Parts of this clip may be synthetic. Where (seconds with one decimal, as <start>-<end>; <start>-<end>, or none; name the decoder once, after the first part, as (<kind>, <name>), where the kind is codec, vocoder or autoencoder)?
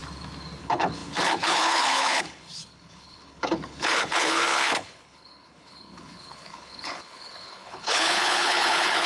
0.6-9.1 (codec, HILCodec)